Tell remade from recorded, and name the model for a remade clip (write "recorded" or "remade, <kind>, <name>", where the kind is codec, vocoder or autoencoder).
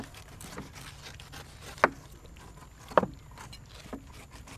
recorded